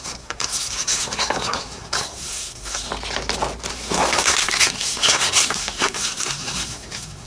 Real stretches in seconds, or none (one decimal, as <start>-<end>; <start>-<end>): 2.9-3.7